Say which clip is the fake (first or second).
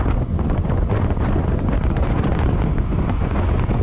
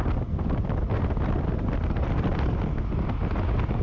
first